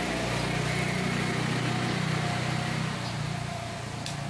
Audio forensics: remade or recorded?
recorded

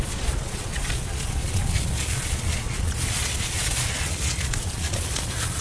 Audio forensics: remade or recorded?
remade